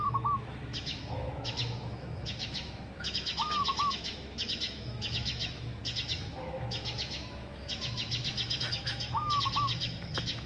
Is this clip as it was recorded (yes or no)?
no